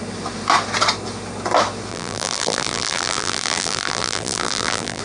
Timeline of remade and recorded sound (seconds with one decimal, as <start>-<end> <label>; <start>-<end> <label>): 0.0-1.9 recorded; 1.9-5.0 remade